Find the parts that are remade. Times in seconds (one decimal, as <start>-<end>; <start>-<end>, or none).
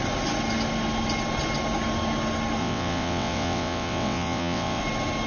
2.6-4.8